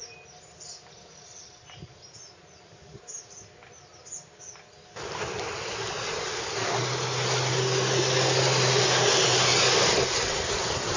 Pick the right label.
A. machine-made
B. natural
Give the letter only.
B